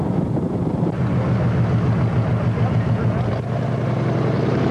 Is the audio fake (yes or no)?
no